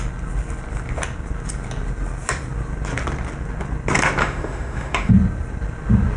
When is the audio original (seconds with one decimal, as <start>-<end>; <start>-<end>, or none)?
0.0-4.2; 5.1-6.2